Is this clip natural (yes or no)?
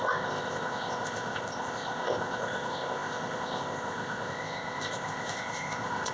no